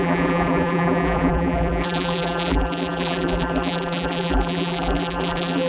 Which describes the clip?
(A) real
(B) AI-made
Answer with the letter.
B